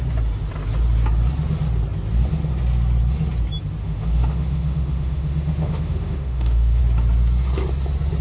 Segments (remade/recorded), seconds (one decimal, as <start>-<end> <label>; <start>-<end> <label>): 0.0-3.8 recorded; 3.8-6.8 remade; 6.8-8.2 recorded